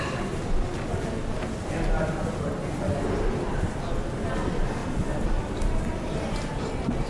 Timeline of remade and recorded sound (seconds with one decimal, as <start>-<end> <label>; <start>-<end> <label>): 0.0-7.1 recorded